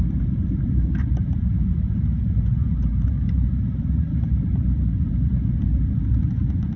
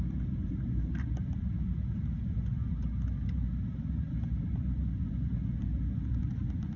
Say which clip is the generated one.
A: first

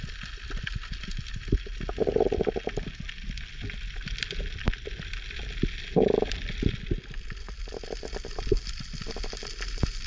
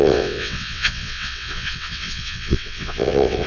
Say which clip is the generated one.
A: second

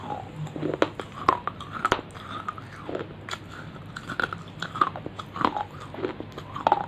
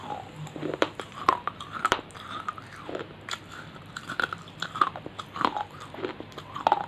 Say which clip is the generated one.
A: second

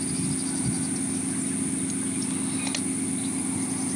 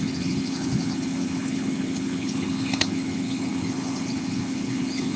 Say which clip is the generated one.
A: second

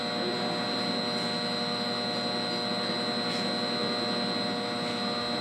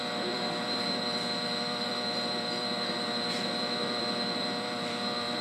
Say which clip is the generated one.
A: second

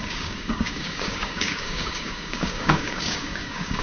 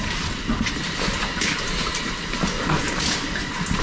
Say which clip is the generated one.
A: first